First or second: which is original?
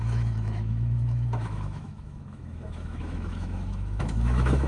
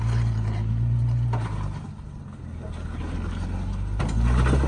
second